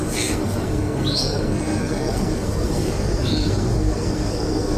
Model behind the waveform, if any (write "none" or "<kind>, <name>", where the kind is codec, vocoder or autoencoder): codec, SNAC